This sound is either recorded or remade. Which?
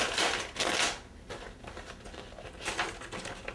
recorded